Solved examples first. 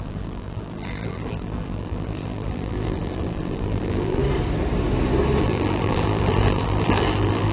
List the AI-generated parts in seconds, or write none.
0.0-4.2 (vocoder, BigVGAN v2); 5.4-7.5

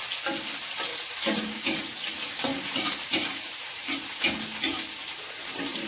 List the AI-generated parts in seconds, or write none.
0.9-1.5 (vocoder, BigVGAN v2); 2.5-3.8